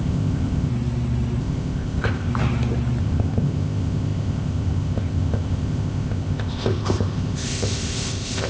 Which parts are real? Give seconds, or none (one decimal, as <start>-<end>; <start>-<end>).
0.7-1.4; 2.3-3.0